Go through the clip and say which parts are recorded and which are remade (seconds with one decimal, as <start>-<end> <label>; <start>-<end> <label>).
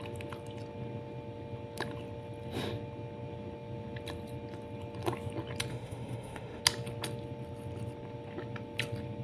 0.0-5.7 recorded; 5.7-6.6 remade; 6.6-9.2 recorded